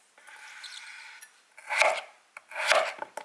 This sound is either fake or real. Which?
real